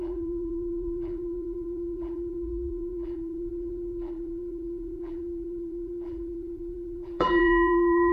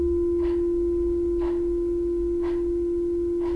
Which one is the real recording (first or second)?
second